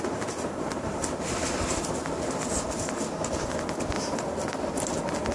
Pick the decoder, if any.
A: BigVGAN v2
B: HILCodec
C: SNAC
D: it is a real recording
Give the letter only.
D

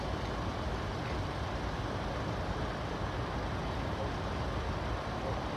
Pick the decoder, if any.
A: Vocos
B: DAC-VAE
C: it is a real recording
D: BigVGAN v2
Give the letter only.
C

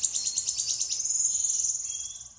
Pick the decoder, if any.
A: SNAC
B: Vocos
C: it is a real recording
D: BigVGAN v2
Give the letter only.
C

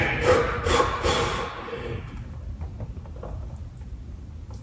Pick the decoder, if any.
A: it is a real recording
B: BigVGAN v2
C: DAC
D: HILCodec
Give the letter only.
A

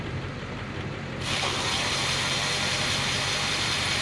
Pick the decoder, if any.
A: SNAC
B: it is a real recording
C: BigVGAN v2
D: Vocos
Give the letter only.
C